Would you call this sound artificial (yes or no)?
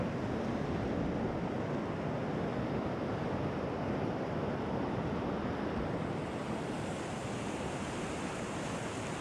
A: no